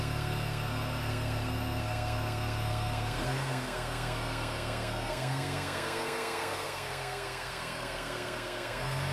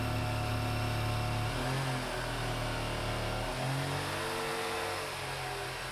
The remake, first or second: first